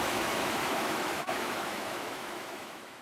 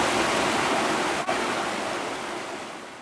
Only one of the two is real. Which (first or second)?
second